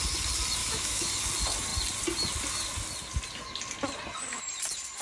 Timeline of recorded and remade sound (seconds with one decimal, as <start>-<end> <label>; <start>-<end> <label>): 0.0-0.6 recorded; 0.6-1.1 remade; 1.1-5.0 recorded